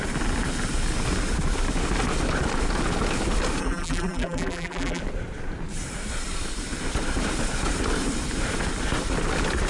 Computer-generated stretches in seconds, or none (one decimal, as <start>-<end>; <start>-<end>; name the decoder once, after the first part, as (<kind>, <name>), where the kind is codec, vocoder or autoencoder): 3.6-5.0 (vocoder, BigVGAN v2)